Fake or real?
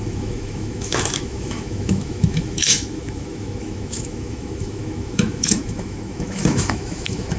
fake